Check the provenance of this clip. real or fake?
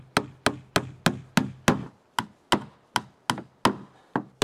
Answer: real